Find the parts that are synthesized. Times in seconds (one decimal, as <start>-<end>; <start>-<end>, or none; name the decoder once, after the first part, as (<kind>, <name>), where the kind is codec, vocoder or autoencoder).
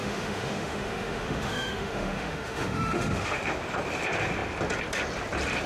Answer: 0.0-3.4 (autoencoder, DAC-VAE)